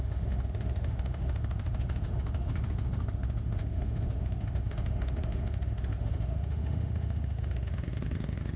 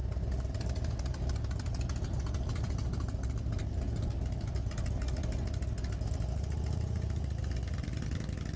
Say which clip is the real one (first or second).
second